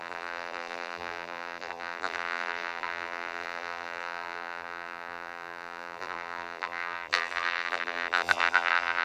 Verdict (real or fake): fake